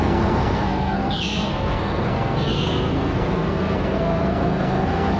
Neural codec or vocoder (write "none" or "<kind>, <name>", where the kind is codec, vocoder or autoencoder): codec, SNAC